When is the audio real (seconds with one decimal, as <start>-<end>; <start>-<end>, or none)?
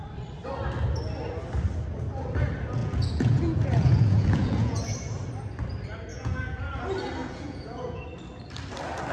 0.0-2.8; 4.8-6.1; 6.6-7.2; 8.0-9.1